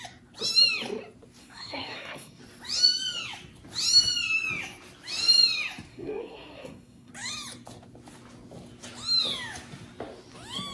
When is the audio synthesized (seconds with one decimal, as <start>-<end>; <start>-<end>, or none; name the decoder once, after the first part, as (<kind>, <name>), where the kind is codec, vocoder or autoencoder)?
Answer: 1.4-2.4 (codec, SNAC); 5.9-7.1